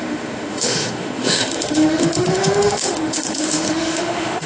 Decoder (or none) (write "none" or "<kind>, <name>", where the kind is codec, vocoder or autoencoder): autoencoder, DAC-VAE